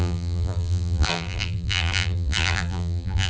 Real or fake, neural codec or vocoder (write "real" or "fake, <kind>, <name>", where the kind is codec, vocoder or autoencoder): fake, vocoder, BigVGAN v2